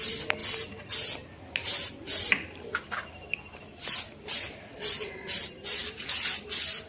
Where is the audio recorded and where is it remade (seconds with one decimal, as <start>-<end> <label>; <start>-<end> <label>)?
0.0-6.9 recorded